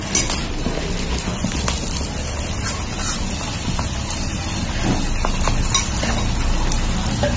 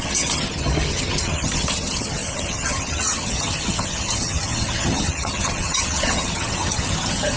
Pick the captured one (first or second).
first